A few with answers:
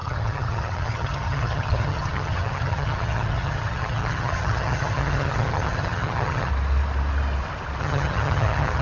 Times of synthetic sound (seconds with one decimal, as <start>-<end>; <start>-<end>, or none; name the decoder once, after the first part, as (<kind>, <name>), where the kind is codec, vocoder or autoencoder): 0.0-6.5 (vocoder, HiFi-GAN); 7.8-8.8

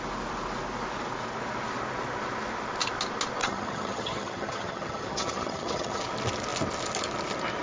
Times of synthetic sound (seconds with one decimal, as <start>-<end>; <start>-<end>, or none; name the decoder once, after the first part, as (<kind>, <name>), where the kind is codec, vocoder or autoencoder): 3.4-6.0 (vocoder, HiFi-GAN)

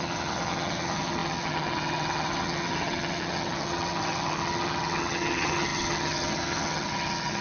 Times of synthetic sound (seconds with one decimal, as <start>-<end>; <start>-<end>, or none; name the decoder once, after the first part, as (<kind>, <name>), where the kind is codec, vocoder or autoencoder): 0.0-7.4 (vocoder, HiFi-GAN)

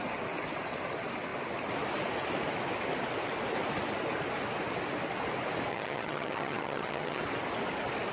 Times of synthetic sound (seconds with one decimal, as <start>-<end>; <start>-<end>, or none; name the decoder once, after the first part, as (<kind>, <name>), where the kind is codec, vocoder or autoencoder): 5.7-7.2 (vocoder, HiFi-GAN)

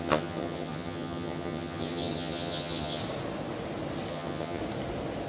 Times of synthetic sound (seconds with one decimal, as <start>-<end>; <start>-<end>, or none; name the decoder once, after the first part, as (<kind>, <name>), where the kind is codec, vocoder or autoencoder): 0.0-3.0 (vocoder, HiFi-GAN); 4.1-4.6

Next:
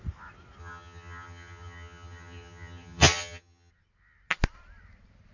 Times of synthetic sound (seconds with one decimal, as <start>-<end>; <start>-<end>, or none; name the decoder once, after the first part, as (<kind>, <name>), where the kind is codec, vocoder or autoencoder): 0.6-3.7 (vocoder, HiFi-GAN)

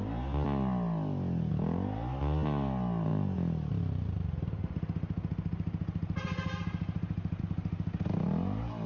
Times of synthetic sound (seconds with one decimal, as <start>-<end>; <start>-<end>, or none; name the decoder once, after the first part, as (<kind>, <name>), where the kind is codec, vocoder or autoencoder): none